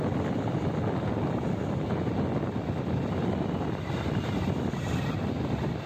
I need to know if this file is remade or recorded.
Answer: recorded